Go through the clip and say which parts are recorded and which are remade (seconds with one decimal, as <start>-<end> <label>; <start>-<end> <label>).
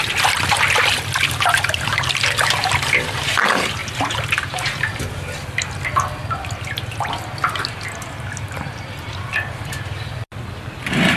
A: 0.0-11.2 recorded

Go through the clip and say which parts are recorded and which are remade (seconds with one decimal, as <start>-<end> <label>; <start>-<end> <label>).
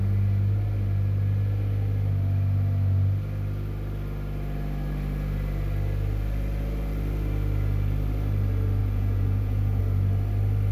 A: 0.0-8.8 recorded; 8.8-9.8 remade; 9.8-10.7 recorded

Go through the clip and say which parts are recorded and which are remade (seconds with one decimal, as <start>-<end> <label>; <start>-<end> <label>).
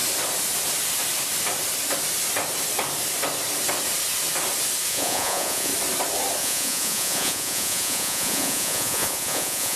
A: 0.0-4.9 recorded; 4.9-5.7 remade; 5.7-6.4 recorded; 6.4-9.8 remade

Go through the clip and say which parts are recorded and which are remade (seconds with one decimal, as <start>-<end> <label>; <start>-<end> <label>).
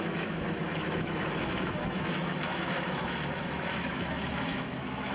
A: 0.0-5.1 remade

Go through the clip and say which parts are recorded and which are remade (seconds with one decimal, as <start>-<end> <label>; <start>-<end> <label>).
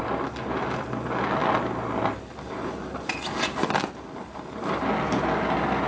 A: 0.0-5.9 recorded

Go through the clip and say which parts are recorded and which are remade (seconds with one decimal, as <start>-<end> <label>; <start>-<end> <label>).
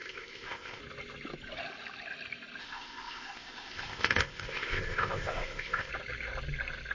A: 0.0-0.8 remade; 0.8-2.6 recorded; 2.6-5.9 remade; 5.9-6.9 recorded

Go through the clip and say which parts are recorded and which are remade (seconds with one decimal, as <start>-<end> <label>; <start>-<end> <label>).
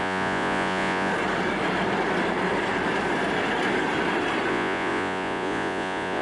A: 0.0-1.1 remade; 1.1-4.5 recorded; 4.5-6.2 remade